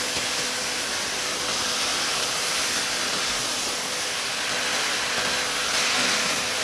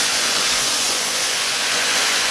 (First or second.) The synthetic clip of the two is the second